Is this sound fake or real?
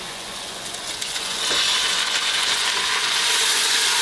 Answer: fake